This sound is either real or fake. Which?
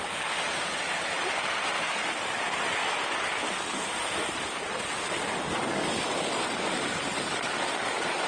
real